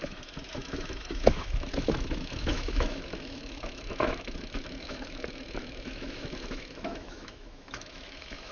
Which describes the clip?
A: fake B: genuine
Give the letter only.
A